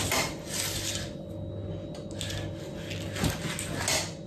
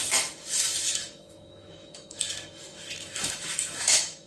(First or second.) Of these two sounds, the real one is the first